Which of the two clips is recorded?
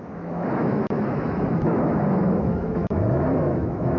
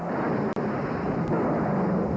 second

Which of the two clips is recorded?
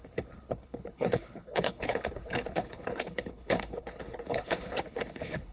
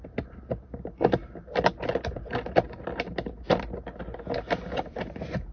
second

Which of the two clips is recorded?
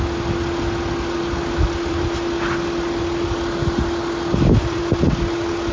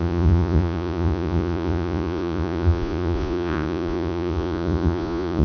first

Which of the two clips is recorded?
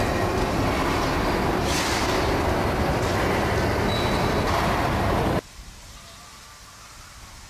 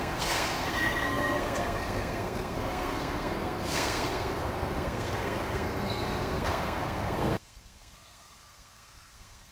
first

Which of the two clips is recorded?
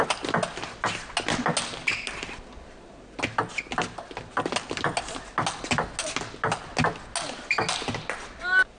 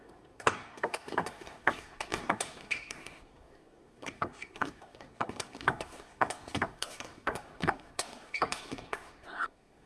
first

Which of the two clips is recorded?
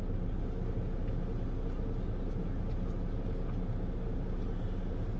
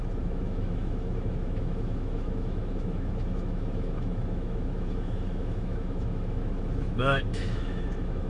first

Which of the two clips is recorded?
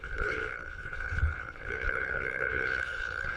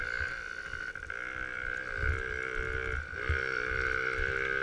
second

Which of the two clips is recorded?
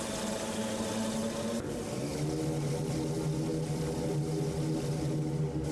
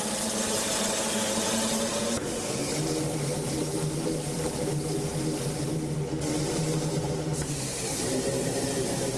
first